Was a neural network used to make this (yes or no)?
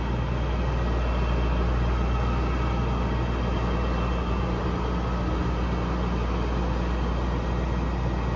no